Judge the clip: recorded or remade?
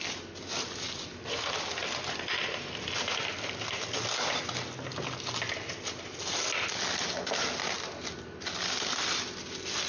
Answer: recorded